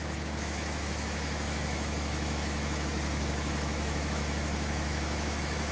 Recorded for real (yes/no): no